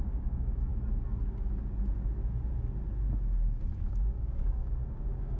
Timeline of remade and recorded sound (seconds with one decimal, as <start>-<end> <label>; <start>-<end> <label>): 0.0-0.7 remade; 0.7-3.9 recorded; 3.9-5.4 remade